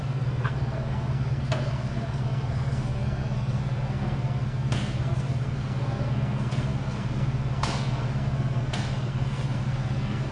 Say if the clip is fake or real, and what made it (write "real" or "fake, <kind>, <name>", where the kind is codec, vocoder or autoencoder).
fake, codec, SNAC